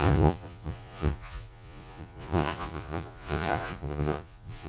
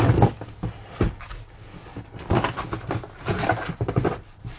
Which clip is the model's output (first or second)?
first